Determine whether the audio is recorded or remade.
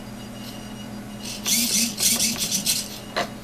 recorded